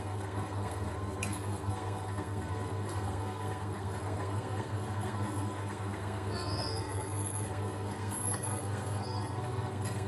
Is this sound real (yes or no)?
no